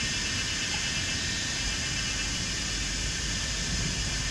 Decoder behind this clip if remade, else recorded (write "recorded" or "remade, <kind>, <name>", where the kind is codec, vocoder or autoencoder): recorded